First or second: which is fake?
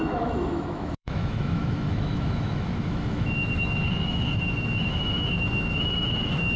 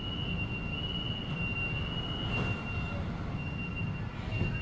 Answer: first